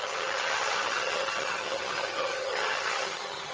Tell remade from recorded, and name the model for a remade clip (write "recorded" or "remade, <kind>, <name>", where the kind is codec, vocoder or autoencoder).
remade, vocoder, HiFi-GAN